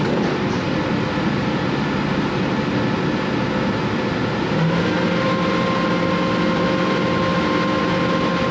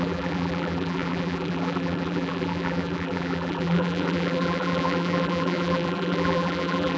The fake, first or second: second